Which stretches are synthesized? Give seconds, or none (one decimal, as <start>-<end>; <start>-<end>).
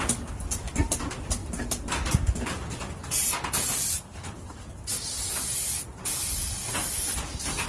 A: none